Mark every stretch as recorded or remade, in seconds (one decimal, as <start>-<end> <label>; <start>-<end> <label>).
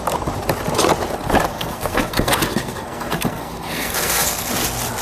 0.0-1.5 recorded; 1.5-4.5 remade; 4.5-5.0 recorded